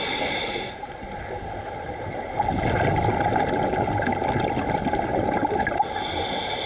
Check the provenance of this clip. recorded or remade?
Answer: recorded